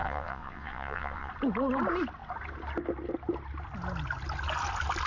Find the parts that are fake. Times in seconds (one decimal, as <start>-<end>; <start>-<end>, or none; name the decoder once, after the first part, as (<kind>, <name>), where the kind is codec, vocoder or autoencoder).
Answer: 0.0-1.3 (vocoder, WaveNeXt)